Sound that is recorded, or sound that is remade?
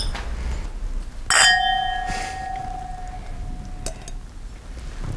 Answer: recorded